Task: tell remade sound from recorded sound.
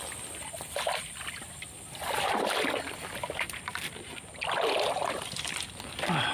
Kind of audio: recorded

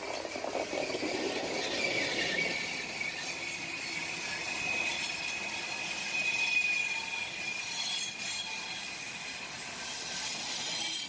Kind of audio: recorded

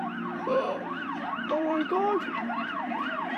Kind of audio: remade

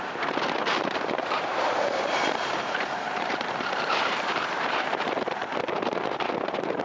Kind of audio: remade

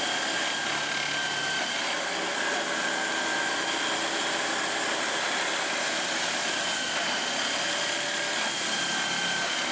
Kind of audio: recorded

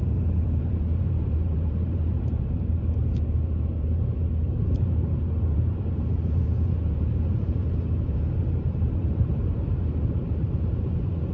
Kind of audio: remade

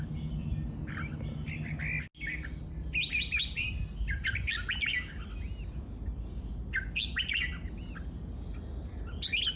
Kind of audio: recorded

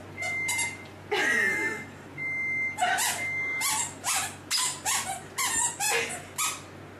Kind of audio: recorded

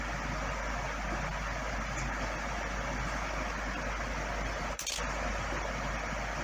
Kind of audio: recorded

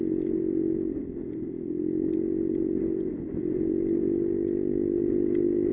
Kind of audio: recorded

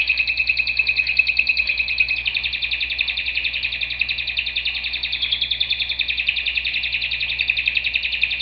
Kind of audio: recorded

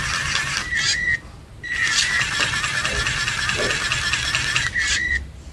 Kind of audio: remade